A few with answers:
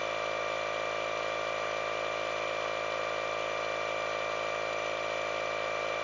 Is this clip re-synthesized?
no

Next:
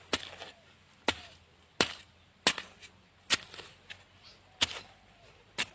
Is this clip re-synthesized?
no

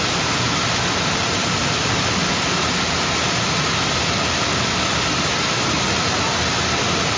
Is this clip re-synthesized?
no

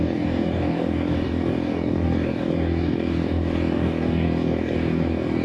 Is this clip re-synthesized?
yes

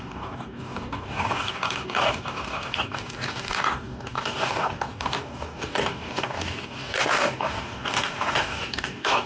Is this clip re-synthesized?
yes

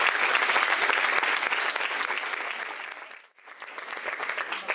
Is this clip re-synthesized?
no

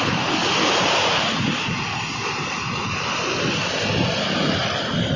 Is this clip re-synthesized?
no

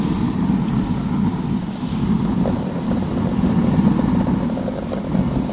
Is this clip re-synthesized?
no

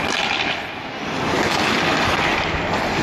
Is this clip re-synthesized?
no